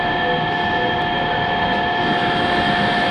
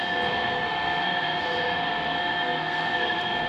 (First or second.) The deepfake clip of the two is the second